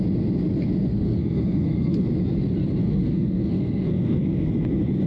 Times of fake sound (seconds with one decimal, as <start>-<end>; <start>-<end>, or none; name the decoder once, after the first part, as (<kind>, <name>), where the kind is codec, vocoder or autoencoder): 0.9-2.0 (codec, SNAC); 2.8-4.5